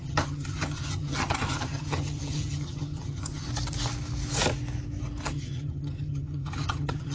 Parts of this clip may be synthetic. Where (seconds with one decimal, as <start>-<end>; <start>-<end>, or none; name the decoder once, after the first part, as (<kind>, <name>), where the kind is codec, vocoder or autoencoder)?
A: 0.0-3.5 (vocoder, HiFi-GAN); 5.3-7.1